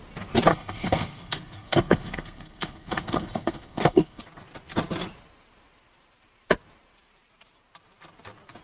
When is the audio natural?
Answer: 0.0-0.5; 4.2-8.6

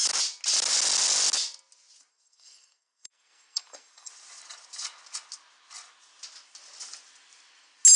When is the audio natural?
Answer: 0.0-2.1; 4.1-8.0

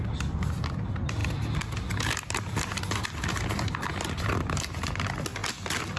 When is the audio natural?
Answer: 0.0-6.0

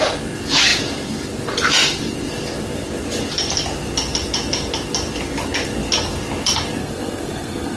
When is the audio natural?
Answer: 0.0-6.8

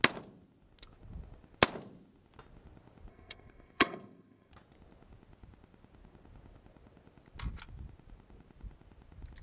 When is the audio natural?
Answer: 0.0-3.1; 4.5-9.4